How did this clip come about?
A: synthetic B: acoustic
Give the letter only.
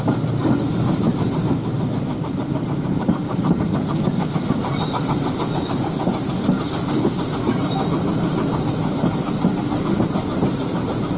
B